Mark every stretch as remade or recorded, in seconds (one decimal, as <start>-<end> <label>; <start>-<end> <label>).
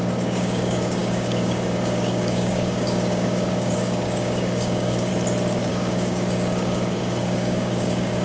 0.0-5.1 remade; 5.1-5.7 recorded; 5.7-8.2 remade